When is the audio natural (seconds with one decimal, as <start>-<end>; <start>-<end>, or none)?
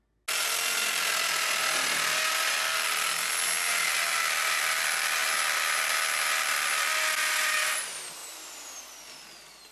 0.0-9.7